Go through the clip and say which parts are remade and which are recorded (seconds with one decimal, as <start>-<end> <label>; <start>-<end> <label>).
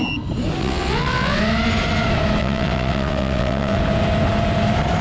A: 0.0-0.6 recorded; 0.6-1.4 remade; 1.4-2.4 recorded; 2.4-3.8 remade; 3.8-5.0 recorded